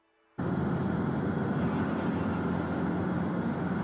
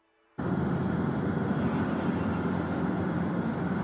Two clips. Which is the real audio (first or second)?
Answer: first